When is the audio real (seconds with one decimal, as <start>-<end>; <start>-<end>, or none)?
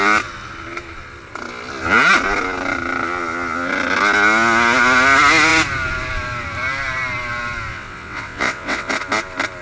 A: 0.0-7.7; 8.9-9.6